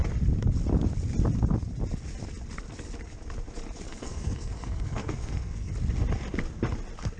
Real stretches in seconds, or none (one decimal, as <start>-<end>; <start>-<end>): 0.0-3.9; 5.7-7.2